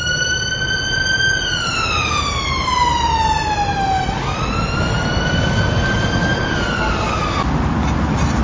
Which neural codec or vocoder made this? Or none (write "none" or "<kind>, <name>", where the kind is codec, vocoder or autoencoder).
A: none